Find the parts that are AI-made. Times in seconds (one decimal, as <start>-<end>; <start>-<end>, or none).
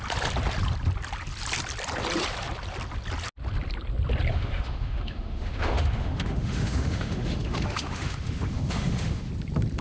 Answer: 4.3-9.3